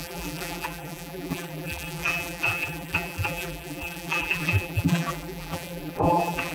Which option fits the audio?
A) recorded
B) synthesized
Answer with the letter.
B